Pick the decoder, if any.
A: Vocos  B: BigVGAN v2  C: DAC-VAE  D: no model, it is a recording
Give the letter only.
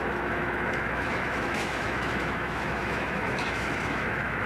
C